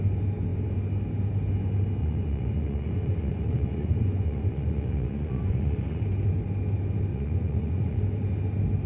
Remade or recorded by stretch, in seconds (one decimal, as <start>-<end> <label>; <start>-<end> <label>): 0.0-2.0 recorded; 2.0-6.0 remade; 6.0-7.1 recorded; 7.1-8.0 remade; 8.0-8.9 recorded